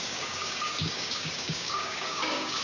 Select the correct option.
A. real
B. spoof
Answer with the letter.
B